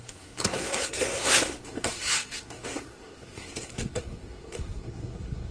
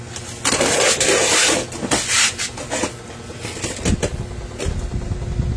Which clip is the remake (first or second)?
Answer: first